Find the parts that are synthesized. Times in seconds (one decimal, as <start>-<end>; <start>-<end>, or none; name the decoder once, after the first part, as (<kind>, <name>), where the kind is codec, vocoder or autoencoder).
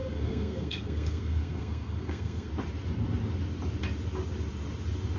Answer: 0.0-2.5 (codec, SNAC)